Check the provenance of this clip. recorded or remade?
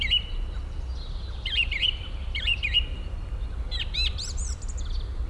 recorded